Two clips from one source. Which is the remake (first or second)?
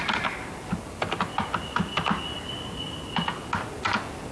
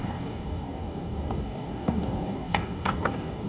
second